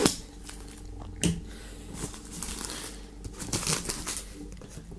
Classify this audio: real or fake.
real